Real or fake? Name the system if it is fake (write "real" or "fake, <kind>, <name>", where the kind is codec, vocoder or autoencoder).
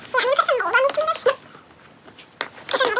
real